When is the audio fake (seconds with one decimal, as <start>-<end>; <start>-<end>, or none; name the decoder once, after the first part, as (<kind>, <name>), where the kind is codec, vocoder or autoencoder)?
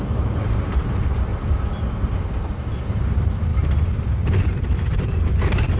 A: 0.0-1.3 (vocoder, BigVGAN v2); 2.4-5.8